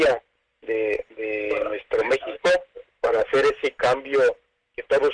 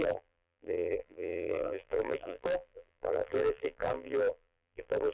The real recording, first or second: first